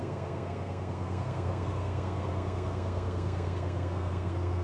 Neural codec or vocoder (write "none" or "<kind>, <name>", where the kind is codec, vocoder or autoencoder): codec, SNAC